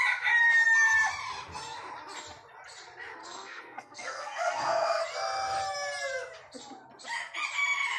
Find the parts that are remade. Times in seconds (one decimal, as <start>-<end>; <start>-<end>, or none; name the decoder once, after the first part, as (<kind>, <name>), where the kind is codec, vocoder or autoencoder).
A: 3.2-5.0 (codec, SNAC)